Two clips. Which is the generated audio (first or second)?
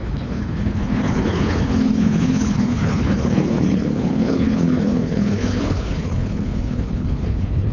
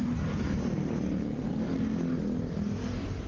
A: first